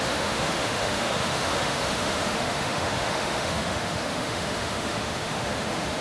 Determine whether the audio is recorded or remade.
remade